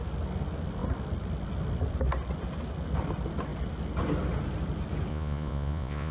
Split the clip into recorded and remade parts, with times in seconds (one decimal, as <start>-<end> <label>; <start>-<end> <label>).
0.0-5.1 recorded; 5.1-6.1 remade